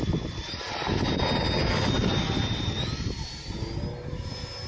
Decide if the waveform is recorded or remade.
recorded